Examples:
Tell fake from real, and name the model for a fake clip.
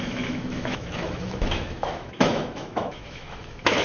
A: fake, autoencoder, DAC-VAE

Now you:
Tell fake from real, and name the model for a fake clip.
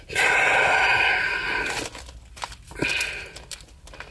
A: real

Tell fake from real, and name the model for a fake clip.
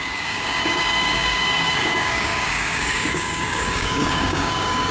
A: fake, codec, DAC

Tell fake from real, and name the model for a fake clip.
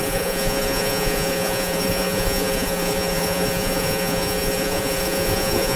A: fake, vocoder, Vocos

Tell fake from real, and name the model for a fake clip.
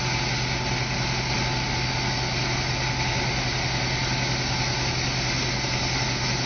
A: real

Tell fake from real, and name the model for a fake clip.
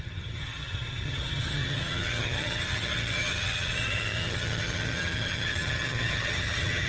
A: fake, vocoder, HiFi-GAN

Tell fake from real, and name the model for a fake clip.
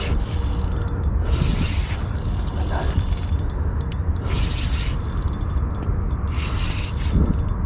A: real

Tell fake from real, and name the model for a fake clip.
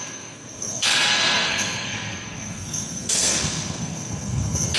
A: fake, codec, SNAC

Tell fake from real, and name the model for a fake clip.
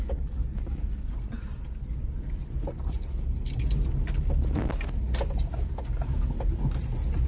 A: real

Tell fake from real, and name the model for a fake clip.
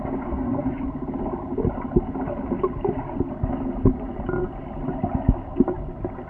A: real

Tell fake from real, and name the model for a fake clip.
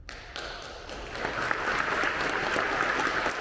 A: real